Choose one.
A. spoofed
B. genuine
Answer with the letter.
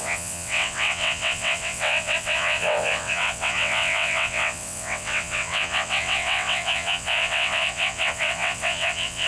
A